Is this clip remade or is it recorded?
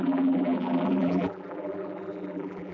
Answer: remade